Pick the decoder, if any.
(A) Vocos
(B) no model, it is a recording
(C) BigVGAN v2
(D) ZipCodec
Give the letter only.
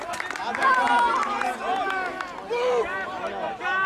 B